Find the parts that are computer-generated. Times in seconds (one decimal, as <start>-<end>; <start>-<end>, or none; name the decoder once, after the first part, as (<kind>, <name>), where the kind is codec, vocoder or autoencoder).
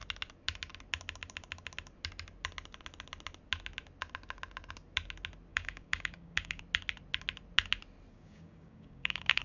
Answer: 5.5-6.6 (codec, DAC); 8.1-9.4